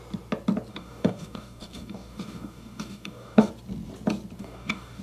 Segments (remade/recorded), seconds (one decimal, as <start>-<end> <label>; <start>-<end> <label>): 0.0-0.7 recorded; 0.7-3.5 remade; 3.5-4.4 recorded; 4.4-5.0 remade

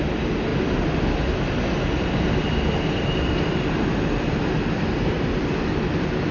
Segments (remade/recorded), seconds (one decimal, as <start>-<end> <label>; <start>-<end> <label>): 0.0-6.3 recorded

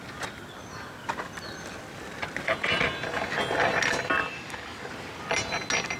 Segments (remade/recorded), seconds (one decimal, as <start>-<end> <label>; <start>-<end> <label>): 0.0-4.2 recorded; 4.2-4.9 remade; 4.9-6.0 recorded

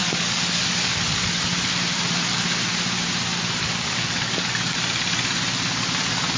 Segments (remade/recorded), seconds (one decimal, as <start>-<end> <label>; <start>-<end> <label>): 0.0-1.0 remade; 1.0-3.6 recorded; 3.6-4.5 remade; 4.5-6.4 recorded

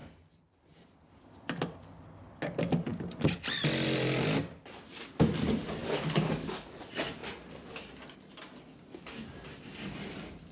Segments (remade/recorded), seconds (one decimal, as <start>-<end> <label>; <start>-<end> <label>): 0.0-5.8 recorded; 5.8-6.8 remade; 6.8-10.5 recorded

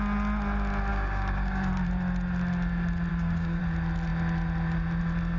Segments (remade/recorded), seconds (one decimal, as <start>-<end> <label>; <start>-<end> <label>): 0.0-0.9 recorded; 0.9-1.7 remade; 1.7-3.1 recorded; 3.1-3.6 remade; 3.6-5.4 recorded

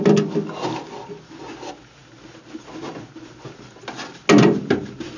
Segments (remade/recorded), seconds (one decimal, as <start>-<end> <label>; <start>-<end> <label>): 0.0-5.2 recorded